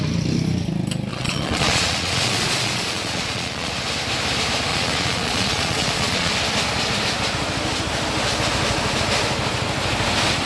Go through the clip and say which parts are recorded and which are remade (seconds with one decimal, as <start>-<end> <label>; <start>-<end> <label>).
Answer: 0.0-1.1 recorded; 1.1-3.7 remade; 3.7-4.7 recorded; 4.7-6.3 remade; 6.3-10.5 recorded